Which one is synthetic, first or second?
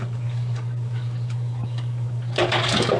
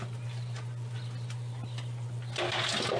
first